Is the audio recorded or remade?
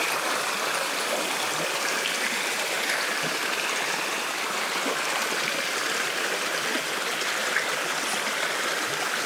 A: remade